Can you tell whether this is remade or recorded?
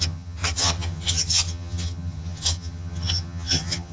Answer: remade